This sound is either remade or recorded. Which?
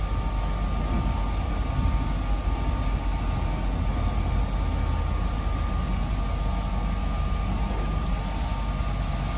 recorded